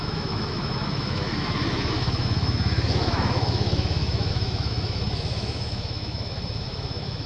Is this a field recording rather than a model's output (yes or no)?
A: no